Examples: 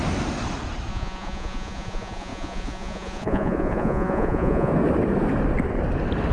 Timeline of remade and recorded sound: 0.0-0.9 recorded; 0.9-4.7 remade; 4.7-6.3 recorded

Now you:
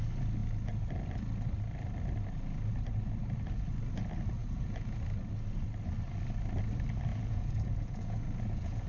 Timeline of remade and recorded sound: 0.0-4.4 recorded; 4.4-5.0 remade; 5.0-7.1 recorded; 7.1-8.9 remade

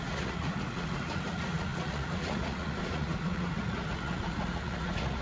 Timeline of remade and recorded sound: 0.0-5.2 remade